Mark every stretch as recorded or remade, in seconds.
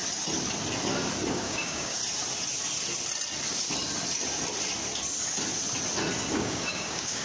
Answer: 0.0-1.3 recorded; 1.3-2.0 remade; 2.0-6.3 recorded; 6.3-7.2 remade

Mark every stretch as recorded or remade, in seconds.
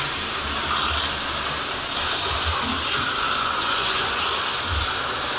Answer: 0.0-3.4 recorded; 3.4-4.2 remade; 4.2-5.4 recorded